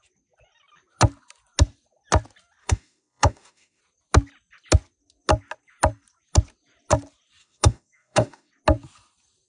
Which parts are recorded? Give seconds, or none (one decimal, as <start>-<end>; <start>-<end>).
0.0-2.6; 3.8-7.4; 8.5-9.5